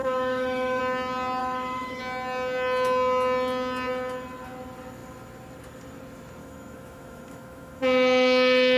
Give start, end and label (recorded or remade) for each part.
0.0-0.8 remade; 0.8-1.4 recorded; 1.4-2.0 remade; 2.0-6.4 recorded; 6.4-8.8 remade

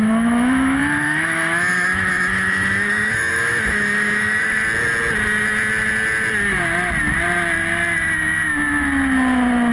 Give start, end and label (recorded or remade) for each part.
0.0-4.6 remade; 4.6-9.7 recorded

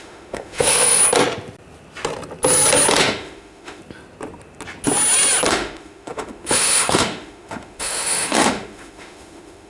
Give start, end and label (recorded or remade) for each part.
0.0-1.0 remade; 1.0-3.0 recorded; 3.0-3.8 remade; 3.8-5.5 recorded; 5.5-9.7 remade

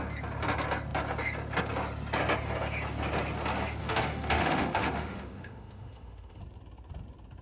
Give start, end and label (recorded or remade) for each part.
0.0-3.8 recorded; 3.8-6.4 remade; 6.4-7.4 recorded

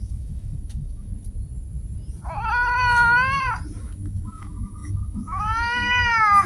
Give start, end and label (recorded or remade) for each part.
0.0-1.1 remade; 1.1-3.8 recorded; 3.8-6.5 remade